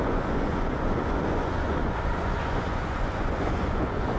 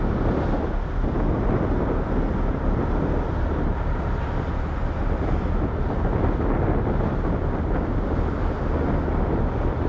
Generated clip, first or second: first